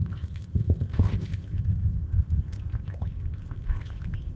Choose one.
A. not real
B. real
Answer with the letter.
A